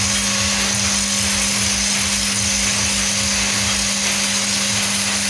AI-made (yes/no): no